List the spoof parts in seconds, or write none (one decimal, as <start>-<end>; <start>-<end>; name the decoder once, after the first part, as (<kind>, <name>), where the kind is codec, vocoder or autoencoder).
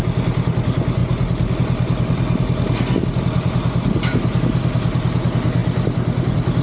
none